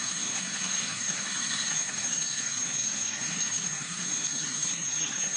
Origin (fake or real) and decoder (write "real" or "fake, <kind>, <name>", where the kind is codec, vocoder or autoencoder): fake, codec, SNAC